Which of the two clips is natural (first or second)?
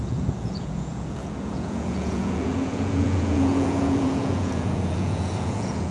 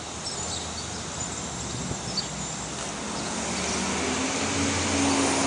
second